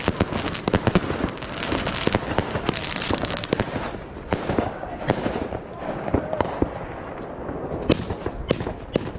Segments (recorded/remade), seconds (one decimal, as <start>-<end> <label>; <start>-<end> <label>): 0.0-2.9 recorded; 2.9-5.8 remade; 5.8-9.2 recorded